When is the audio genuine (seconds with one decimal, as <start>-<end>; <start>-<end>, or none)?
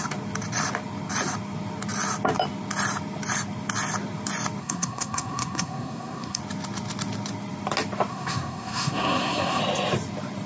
0.0-4.6; 6.4-8.1; 9.6-10.5